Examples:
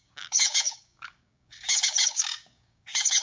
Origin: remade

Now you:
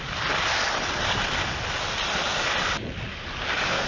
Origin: recorded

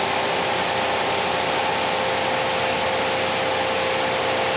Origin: recorded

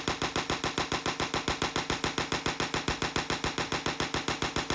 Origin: recorded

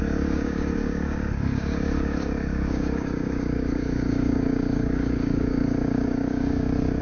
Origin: remade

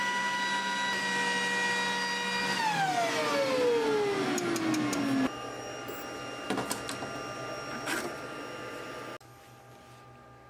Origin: recorded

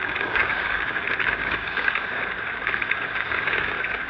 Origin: remade